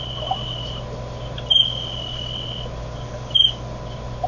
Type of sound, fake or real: real